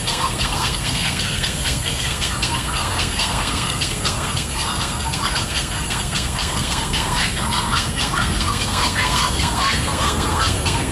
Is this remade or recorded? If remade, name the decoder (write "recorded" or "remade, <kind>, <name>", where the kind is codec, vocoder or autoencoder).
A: remade, codec, SNAC